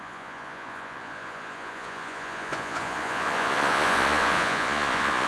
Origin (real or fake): fake